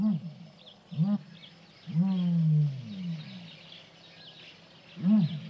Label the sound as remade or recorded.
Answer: recorded